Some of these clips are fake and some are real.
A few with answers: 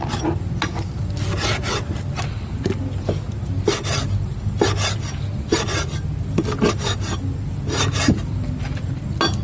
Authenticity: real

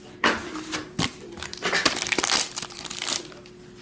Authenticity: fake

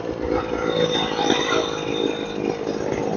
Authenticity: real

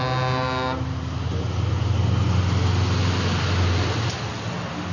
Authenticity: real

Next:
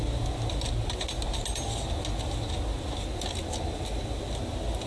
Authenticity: real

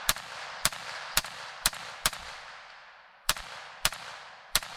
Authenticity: fake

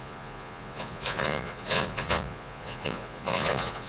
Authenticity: fake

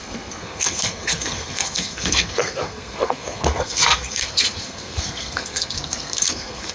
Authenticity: fake